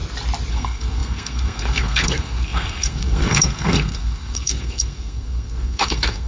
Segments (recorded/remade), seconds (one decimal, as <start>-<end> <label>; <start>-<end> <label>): 0.0-0.5 recorded; 0.5-6.3 remade